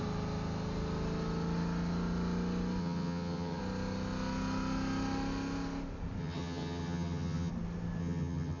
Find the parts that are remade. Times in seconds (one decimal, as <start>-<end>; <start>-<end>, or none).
2.8-3.6; 6.2-7.5; 8.0-8.6